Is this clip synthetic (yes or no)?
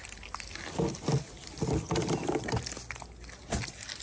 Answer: no